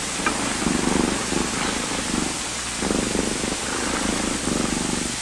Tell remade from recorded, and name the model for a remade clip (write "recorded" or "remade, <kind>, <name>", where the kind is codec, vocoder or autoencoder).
recorded